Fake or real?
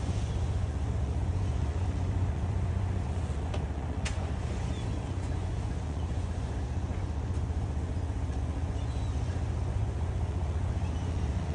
fake